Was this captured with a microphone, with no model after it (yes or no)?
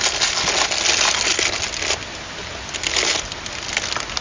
yes